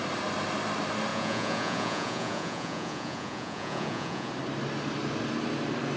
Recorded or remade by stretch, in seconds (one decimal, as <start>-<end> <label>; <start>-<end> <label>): 0.0-1.1 recorded; 1.1-4.3 remade; 4.3-6.0 recorded